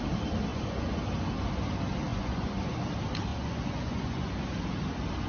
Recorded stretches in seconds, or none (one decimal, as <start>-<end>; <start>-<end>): 0.0-0.5; 1.0-2.1; 2.8-3.3; 4.3-5.3